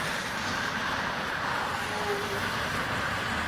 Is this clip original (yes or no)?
yes